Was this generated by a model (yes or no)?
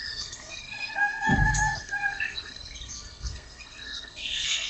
yes